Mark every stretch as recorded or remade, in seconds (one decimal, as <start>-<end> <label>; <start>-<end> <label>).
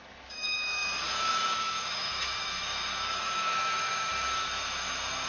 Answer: 0.0-5.3 remade